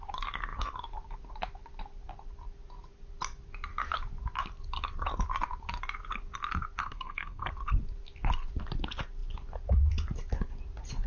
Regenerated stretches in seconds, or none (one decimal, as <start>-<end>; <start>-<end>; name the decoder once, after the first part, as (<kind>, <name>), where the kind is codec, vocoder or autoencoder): 6.8-7.5 (codec, SNAC)